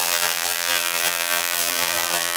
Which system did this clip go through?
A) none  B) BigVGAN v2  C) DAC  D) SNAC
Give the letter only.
B